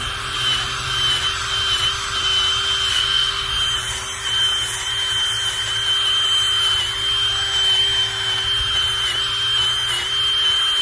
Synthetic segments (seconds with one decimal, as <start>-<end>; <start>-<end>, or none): 2.9-3.5